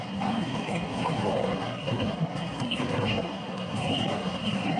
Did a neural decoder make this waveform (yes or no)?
yes